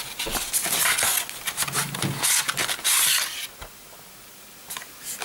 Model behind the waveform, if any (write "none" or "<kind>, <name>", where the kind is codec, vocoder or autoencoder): none